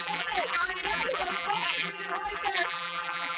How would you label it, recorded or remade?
remade